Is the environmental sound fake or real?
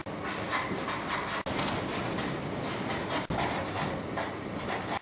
real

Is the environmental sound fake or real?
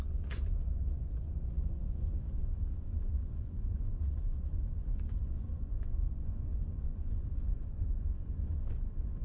fake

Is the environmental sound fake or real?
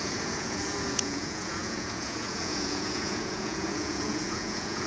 fake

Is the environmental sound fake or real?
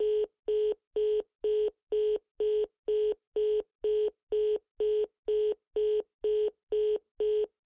real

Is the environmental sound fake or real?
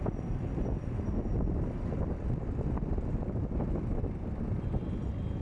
real